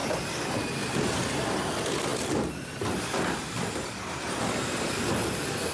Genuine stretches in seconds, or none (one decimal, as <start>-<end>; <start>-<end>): 0.0-5.7